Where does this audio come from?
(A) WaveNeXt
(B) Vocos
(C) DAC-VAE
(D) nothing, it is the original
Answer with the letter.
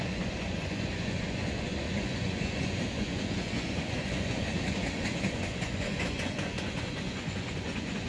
B